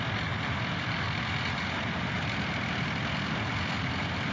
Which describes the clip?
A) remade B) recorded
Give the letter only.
B